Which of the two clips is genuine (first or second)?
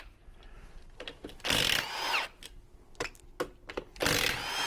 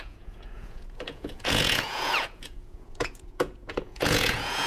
first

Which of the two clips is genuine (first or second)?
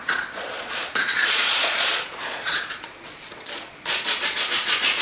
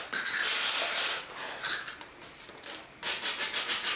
second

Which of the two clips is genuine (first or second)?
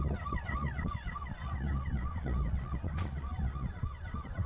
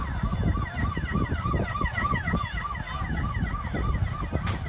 second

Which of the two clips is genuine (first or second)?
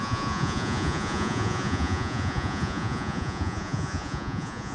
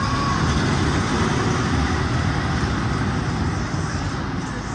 second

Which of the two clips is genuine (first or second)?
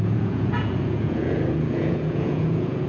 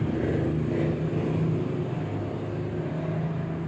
second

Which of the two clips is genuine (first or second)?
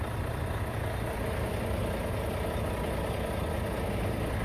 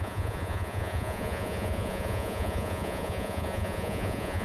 first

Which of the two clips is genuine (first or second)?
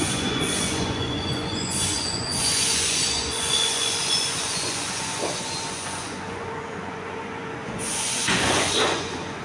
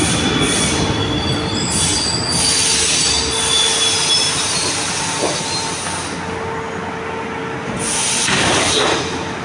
second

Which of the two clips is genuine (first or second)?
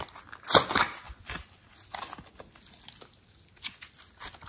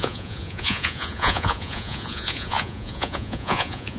first